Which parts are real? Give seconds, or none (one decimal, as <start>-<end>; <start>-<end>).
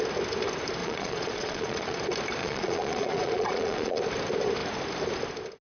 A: 0.0-0.8; 2.0-2.4; 4.0-5.7